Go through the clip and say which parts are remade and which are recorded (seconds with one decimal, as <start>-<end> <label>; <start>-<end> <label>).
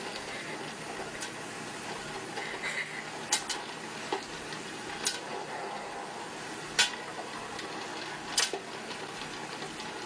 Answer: 0.0-10.1 recorded